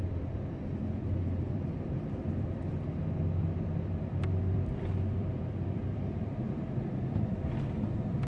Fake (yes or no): yes